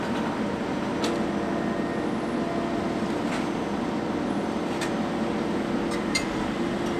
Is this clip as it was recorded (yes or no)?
yes